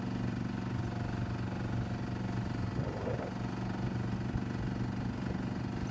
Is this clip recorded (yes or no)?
yes